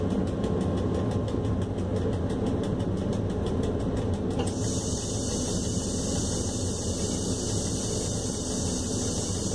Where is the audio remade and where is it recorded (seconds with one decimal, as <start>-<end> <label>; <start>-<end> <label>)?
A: 0.0-9.5 recorded